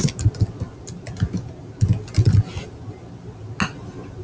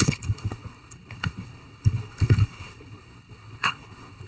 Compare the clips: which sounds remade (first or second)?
second